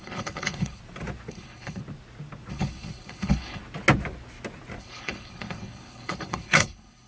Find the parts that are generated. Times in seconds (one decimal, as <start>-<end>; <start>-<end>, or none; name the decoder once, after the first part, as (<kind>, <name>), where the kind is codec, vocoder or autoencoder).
0.0-0.8 (codec, HILCodec); 1.3-1.8; 2.5-3.6; 4.8-7.1